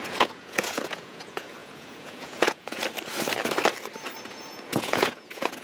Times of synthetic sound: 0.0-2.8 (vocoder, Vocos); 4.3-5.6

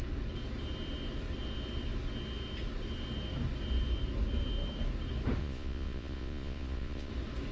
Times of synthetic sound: 5.4-7.1 (vocoder, Vocos)

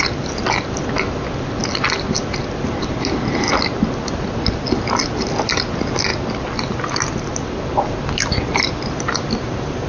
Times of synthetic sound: none

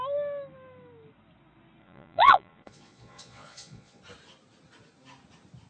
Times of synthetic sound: 1.8-4.0 (vocoder, Vocos)